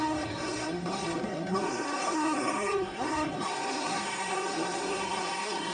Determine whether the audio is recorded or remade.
remade